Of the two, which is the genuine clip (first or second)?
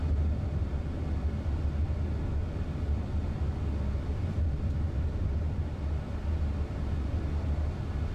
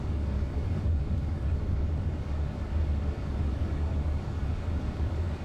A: first